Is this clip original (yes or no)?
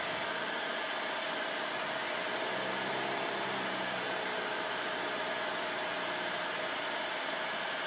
yes